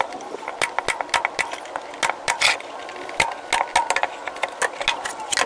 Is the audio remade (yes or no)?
no